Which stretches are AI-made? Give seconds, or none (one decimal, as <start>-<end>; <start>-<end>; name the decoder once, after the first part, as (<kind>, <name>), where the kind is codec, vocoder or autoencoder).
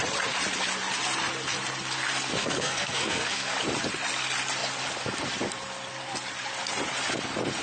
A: 2.4-3.5 (codec, SNAC)